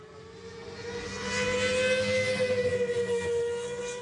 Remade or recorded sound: recorded